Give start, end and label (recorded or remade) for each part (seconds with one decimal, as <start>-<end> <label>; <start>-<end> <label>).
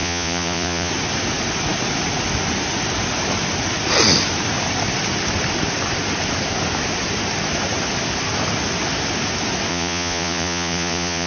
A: 0.0-0.9 remade; 0.9-9.7 recorded; 9.7-11.3 remade